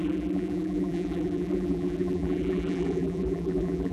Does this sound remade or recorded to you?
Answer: remade